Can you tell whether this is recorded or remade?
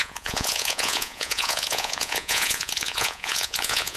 remade